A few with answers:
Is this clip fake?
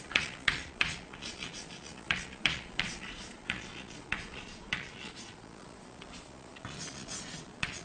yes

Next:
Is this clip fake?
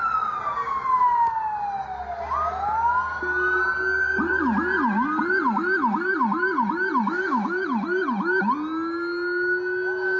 no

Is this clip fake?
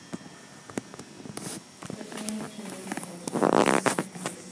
no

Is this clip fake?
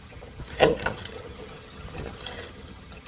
yes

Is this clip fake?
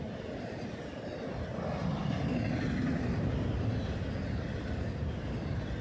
no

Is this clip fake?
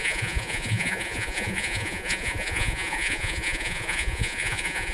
yes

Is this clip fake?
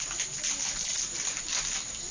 no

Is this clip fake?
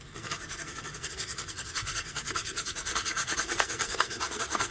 yes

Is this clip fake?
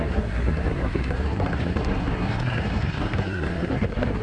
yes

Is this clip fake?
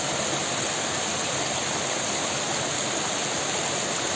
no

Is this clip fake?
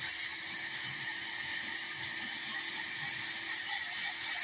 no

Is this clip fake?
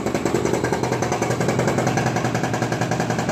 no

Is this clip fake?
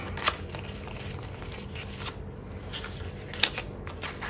no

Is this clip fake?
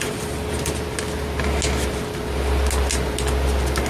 no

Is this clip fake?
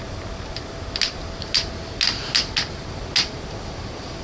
no